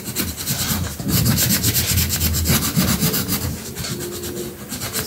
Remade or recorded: recorded